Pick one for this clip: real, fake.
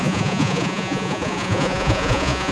fake